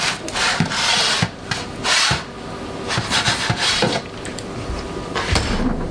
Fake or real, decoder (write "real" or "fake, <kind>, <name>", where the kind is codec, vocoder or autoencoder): real